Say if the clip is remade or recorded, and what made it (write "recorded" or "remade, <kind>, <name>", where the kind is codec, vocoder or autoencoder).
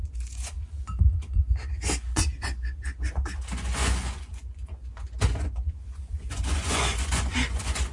remade, vocoder, Vocos